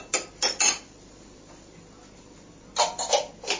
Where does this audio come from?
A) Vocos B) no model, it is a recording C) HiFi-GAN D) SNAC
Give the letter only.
B